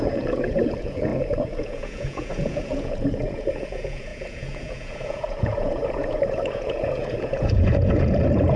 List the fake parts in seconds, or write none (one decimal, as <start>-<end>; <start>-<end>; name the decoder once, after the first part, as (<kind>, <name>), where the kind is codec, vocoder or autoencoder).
0.0-8.6 (vocoder, Vocos)